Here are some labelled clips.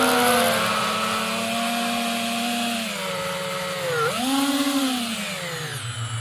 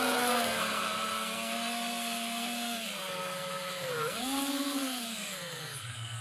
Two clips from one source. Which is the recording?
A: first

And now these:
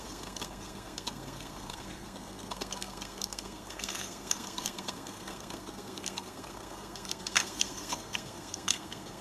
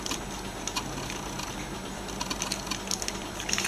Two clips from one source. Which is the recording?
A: second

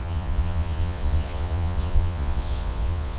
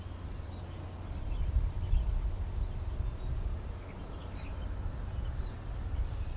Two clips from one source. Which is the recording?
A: second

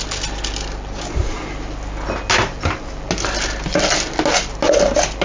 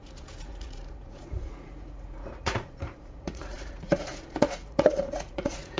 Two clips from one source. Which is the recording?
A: first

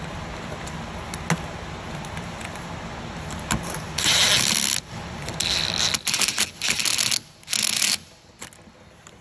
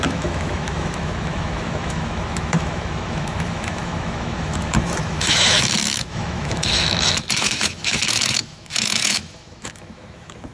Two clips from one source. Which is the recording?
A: first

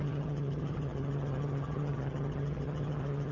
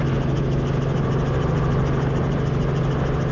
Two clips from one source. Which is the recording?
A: second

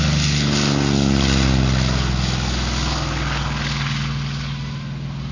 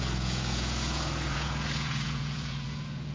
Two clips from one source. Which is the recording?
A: first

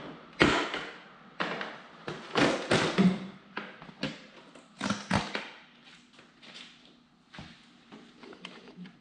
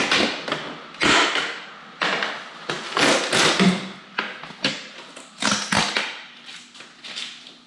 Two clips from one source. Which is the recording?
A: second